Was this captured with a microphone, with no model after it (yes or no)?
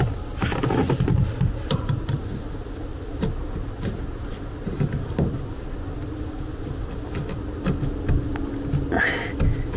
yes